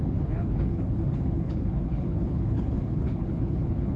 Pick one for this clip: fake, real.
fake